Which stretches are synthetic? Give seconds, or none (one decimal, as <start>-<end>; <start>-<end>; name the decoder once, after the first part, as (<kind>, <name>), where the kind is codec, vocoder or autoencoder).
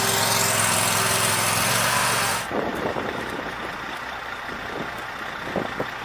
2.7-4.1 (vocoder, BigVGAN v2)